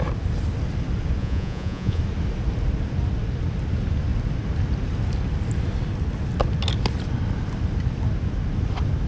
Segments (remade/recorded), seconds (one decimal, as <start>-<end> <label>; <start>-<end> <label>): 0.0-1.2 recorded; 1.2-2.0 remade; 2.0-9.1 recorded